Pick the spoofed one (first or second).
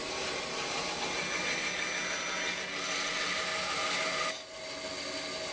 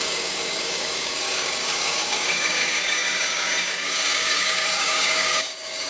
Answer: second